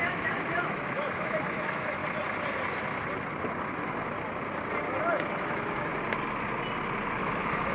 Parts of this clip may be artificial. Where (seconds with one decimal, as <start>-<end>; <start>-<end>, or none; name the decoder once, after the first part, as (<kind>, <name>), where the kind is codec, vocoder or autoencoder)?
0.0-2.0 (autoencoder, DAC-VAE); 5.1-5.9; 7.2-7.7